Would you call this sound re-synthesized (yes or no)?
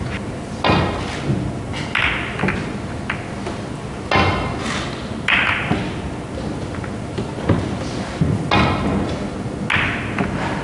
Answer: no